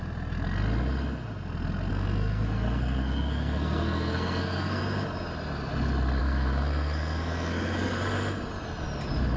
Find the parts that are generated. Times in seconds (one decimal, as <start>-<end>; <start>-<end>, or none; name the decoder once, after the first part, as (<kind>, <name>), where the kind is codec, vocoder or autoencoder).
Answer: 1.9-4.8 (codec, SNAC); 6.2-8.0